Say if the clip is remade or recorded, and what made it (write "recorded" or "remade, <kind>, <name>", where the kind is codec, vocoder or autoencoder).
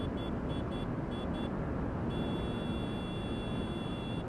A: recorded